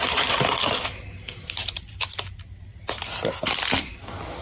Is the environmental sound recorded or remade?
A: recorded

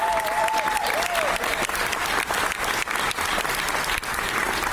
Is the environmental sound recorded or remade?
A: recorded